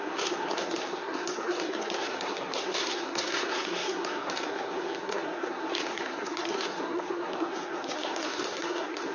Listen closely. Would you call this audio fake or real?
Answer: fake